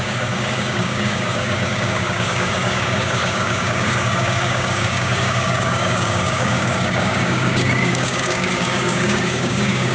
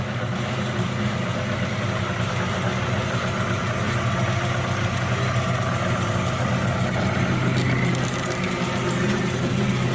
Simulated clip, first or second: first